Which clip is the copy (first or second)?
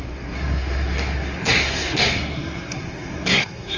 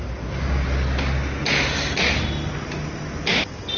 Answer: first